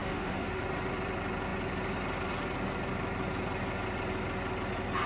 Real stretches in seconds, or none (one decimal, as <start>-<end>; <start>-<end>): 0.6-5.1